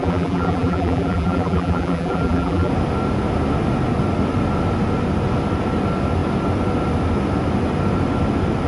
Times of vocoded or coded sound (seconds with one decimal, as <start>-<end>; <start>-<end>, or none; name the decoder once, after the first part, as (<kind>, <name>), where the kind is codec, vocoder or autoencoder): 0.0-2.7 (vocoder, BigVGAN v2)